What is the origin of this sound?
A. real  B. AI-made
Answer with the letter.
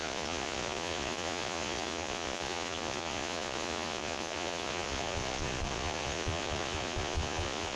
B